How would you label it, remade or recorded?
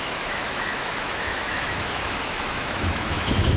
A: remade